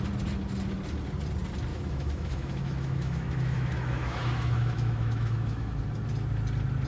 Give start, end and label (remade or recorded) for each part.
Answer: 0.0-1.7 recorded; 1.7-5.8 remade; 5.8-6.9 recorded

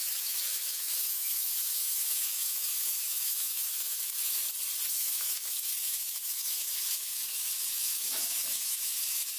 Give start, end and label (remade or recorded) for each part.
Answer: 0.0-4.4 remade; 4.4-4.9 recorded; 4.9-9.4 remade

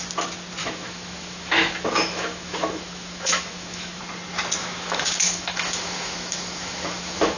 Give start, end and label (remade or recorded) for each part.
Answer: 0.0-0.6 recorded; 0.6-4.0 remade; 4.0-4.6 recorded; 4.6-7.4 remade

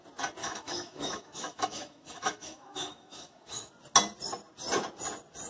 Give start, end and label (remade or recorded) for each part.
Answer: 0.0-0.4 recorded; 0.4-3.7 remade; 3.7-5.5 recorded

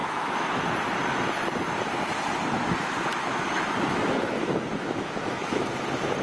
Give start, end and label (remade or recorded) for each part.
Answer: 0.0-0.6 remade; 0.6-3.1 recorded; 3.1-5.7 remade; 5.7-6.2 recorded

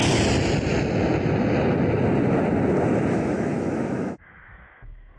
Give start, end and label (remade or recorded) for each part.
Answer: 0.0-3.1 recorded; 3.1-5.2 remade